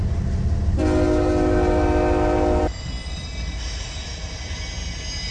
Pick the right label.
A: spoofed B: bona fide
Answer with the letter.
B